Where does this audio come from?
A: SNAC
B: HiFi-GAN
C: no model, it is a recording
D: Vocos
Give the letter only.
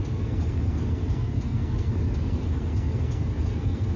A